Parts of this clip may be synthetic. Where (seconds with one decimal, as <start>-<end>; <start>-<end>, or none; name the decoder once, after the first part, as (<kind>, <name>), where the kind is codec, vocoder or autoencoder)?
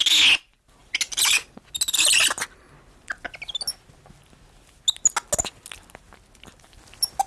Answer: none